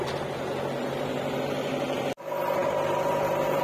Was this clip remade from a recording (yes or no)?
no